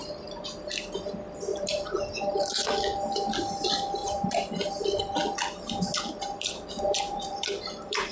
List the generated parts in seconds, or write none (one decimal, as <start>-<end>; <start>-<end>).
1.5-2.7; 4.0-4.7; 5.9-8.1